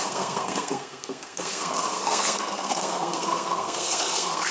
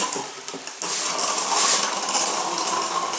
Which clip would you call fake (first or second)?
first